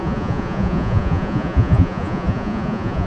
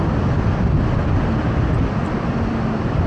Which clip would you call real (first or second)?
second